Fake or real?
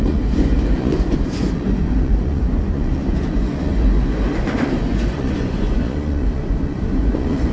fake